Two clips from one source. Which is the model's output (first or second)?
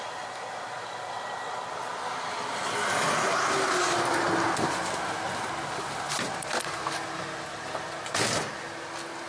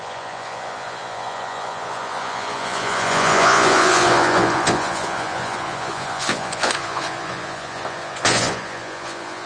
second